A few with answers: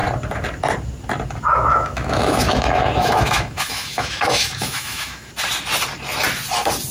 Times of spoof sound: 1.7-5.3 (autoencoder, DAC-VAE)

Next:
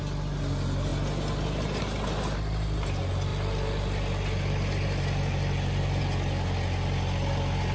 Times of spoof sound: 3.3-6.0 (vocoder, BigVGAN v2)

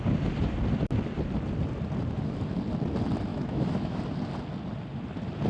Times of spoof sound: 3.3-4.0 (autoencoder, DAC-VAE)

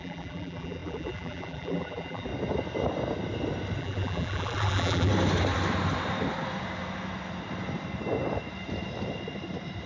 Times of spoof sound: 0.0-2.3 (vocoder, BigVGAN v2); 3.8-5.1